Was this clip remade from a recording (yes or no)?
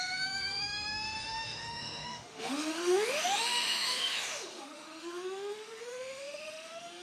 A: yes